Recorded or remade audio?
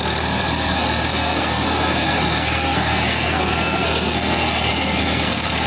remade